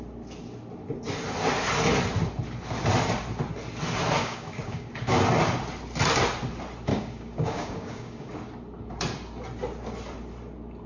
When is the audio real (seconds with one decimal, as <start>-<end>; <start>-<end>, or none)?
0.0-4.2; 4.9-6.9; 8.3-10.9

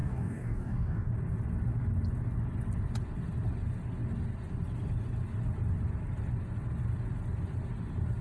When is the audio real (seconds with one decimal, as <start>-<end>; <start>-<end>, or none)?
1.1-8.2

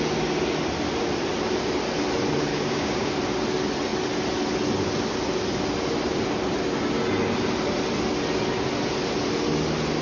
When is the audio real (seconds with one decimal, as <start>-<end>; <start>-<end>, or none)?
0.0-2.5; 3.1-10.0

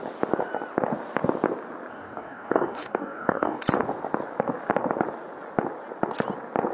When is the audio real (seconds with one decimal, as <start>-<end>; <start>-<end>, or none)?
0.0-1.9; 3.6-6.7